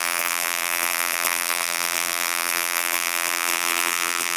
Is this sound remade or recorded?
remade